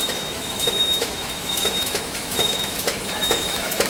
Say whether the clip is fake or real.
fake